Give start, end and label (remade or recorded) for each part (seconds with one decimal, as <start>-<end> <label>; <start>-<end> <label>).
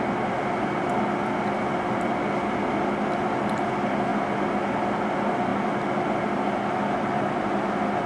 0.0-8.1 recorded